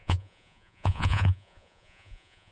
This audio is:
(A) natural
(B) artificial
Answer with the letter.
B